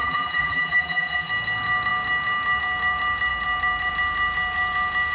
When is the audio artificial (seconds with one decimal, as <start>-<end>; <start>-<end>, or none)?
0.0-1.3